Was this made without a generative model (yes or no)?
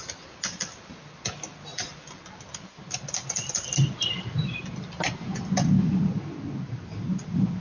yes